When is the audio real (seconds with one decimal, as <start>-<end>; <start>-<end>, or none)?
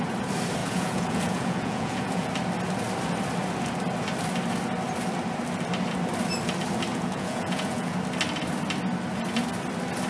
0.0-0.6; 2.3-6.9; 8.0-10.1